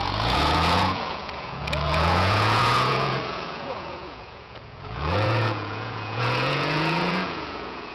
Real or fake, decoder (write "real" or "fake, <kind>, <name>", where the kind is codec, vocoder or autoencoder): fake, vocoder, Vocos